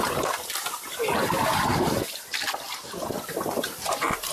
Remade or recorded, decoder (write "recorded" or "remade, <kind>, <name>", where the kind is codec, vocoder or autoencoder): recorded